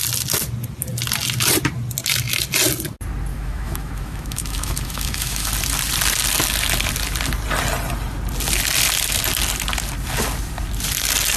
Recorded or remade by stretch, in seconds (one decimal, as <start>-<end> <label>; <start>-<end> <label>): 0.0-3.3 recorded; 3.3-5.5 remade; 5.5-11.4 recorded